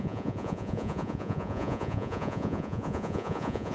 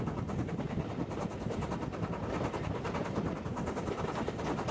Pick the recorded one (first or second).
second